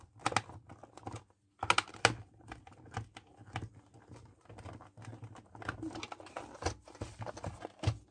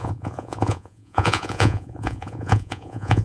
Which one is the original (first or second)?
first